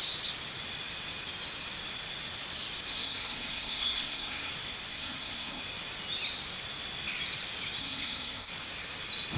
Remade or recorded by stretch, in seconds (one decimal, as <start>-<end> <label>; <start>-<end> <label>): 0.0-2.9 recorded; 2.9-4.5 remade; 4.5-4.9 recorded; 4.9-5.6 remade; 5.6-7.8 recorded; 7.8-8.5 remade; 8.5-9.4 recorded